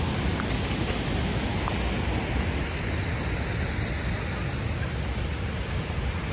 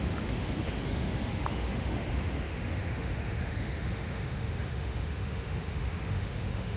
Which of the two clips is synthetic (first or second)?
second